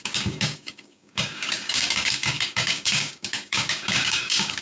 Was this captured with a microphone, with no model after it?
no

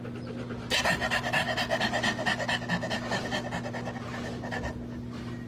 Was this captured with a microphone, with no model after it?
yes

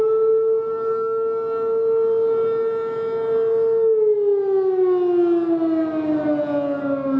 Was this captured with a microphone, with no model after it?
yes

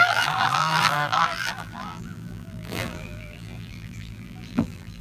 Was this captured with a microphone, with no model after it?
no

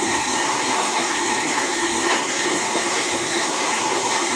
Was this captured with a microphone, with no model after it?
no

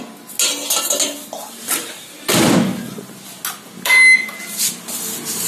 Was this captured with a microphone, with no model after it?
yes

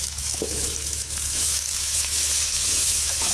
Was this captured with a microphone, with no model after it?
no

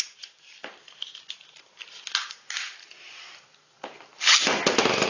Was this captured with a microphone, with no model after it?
yes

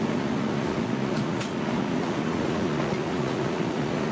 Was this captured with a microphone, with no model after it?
no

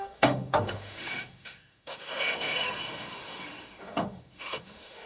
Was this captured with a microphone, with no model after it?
no